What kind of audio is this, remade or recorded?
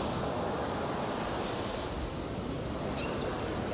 recorded